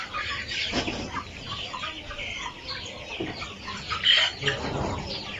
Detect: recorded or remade recorded